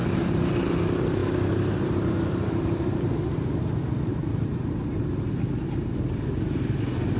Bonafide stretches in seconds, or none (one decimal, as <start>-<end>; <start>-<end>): 0.7-1.2; 3.5-4.1; 6.8-7.2